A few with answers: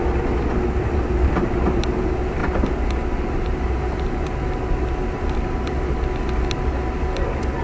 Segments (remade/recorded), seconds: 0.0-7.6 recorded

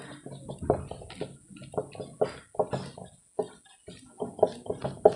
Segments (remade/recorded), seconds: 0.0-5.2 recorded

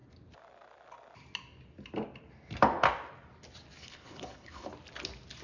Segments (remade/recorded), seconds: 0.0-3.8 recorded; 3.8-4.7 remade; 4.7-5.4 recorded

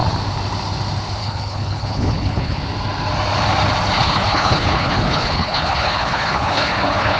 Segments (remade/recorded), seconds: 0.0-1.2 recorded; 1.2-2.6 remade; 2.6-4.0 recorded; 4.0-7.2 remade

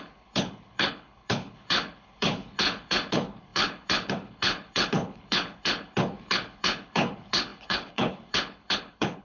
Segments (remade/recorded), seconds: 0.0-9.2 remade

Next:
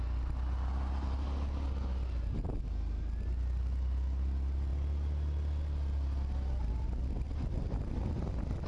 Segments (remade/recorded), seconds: 0.0-8.7 recorded